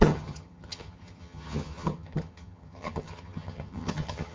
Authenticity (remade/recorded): remade